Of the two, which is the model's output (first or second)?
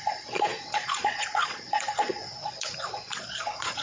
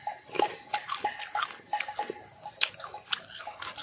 first